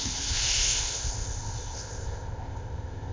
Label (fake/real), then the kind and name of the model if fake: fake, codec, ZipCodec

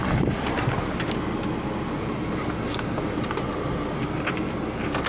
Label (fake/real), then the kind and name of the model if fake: real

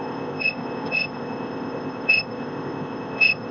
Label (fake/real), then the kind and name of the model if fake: fake, codec, ZipCodec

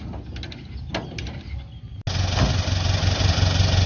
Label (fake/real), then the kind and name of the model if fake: real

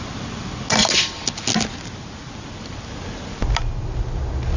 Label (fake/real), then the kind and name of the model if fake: real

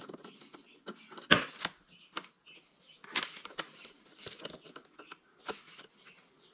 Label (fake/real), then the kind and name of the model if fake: real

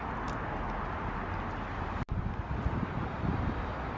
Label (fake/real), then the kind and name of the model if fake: real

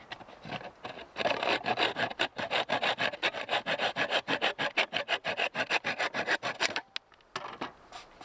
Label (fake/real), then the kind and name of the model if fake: real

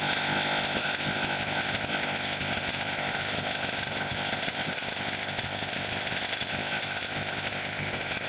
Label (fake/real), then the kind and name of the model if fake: fake, codec, ZipCodec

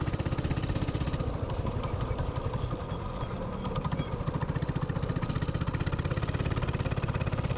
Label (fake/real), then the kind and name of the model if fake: real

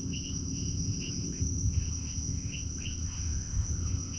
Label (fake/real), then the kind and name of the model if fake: fake, codec, ZipCodec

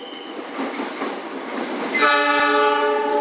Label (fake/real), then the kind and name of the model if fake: real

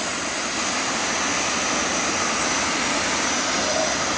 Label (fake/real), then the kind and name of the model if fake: real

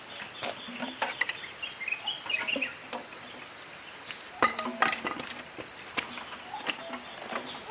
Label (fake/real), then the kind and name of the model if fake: real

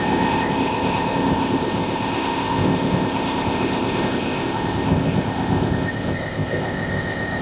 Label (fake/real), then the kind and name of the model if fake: fake, codec, ZipCodec